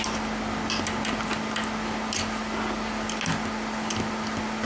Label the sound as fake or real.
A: real